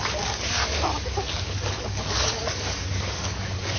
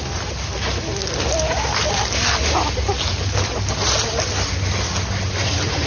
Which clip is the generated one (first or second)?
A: first